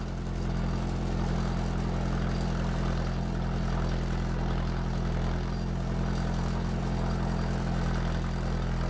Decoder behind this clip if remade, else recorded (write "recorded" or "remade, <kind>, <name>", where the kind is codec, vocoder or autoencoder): recorded